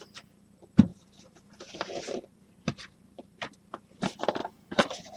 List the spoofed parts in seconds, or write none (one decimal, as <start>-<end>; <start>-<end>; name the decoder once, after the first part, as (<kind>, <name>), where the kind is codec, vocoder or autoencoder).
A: 0.9-4.0 (vocoder, BigVGAN v2); 4.4-5.2